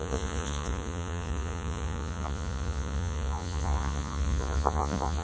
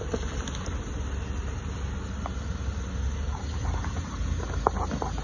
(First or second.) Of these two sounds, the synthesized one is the first